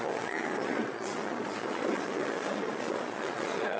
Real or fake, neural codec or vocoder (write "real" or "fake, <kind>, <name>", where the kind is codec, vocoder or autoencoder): fake, vocoder, Vocos